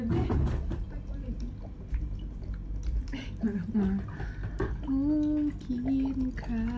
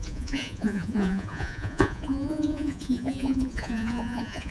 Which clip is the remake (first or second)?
second